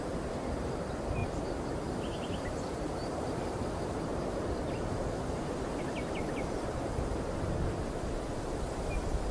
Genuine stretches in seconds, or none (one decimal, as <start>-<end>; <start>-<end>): 0.0-1.2; 5.8-9.3